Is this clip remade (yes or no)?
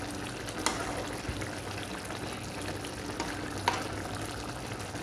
no